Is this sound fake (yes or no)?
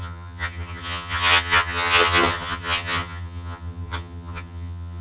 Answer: yes